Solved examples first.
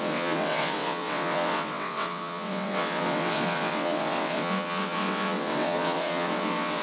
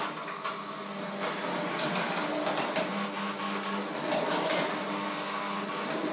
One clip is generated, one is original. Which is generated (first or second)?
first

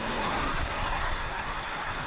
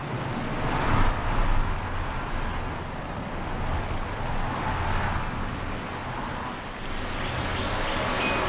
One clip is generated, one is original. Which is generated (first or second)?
first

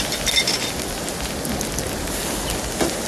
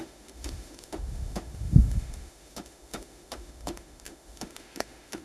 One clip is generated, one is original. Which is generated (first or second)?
second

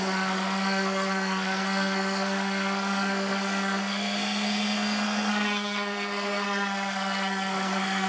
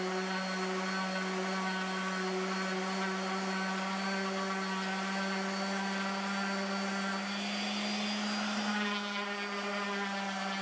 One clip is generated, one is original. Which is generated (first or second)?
first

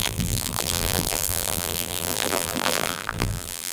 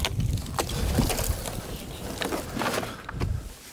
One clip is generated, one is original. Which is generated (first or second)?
first